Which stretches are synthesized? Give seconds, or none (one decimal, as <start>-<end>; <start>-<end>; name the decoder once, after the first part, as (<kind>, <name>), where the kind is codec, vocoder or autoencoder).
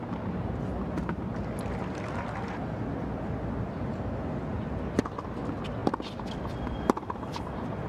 none